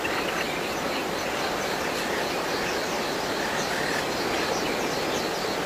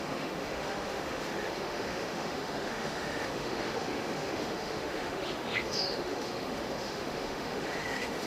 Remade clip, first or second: second